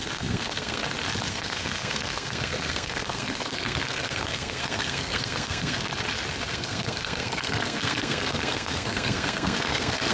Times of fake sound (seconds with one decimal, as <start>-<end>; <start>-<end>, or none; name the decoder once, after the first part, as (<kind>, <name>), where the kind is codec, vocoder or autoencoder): 0.0-0.8 (codec, SNAC); 1.3-5.9; 6.5-10.1